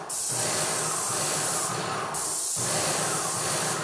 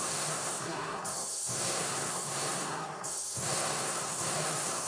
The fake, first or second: second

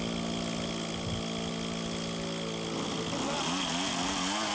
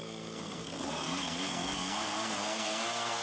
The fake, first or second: second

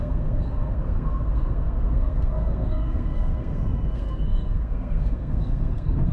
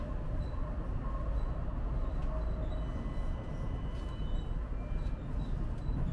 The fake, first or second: first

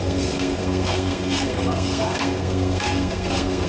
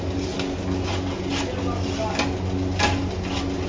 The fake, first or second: first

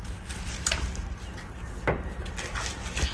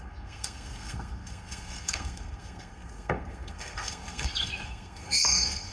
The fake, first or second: second